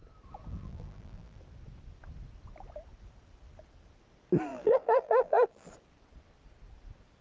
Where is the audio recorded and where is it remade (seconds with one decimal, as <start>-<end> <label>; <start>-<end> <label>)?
0.0-0.5 recorded; 0.5-1.4 remade; 1.4-4.5 recorded; 4.5-5.7 remade; 5.7-7.2 recorded